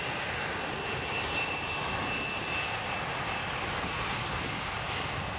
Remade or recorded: recorded